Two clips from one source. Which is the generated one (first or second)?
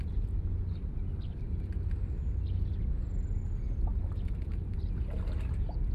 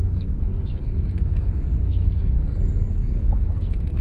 second